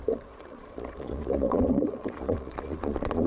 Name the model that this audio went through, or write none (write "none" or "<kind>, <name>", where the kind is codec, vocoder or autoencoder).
vocoder, Vocos